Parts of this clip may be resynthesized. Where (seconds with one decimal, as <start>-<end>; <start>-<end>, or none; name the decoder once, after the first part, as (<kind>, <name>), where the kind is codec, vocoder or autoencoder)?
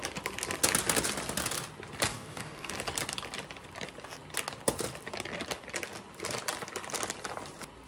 2.1-2.7 (codec, DAC)